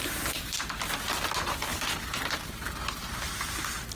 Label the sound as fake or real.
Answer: real